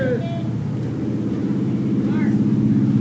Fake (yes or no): no